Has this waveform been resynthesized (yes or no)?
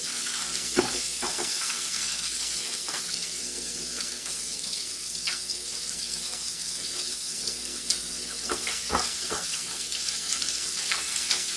yes